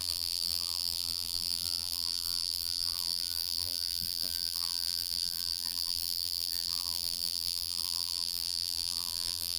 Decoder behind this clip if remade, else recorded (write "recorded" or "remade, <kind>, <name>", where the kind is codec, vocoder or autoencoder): remade, vocoder, BigVGAN v2